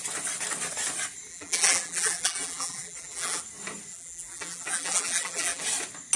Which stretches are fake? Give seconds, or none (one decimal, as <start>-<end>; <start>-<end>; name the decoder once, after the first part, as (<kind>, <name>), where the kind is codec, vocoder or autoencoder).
1.3-3.4 (vocoder, BigVGAN v2); 3.9-5.6